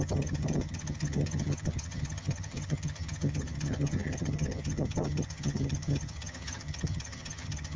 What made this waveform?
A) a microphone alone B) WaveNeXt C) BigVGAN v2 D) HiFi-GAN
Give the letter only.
D